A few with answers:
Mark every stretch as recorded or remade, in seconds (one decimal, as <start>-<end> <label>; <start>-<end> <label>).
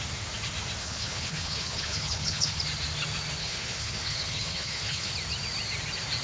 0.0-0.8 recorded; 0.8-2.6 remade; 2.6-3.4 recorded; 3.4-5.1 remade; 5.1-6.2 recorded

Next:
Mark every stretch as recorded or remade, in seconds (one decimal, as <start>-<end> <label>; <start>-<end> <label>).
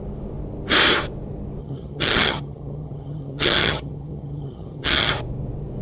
0.0-1.6 recorded; 1.6-5.1 remade; 5.1-5.8 recorded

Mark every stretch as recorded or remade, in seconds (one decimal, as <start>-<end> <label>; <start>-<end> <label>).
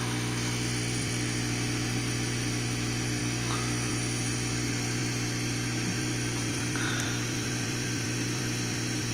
0.0-3.2 remade; 3.2-3.9 recorded; 3.9-9.1 remade